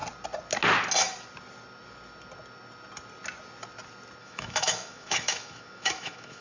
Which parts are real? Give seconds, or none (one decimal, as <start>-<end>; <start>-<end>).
0.0-4.2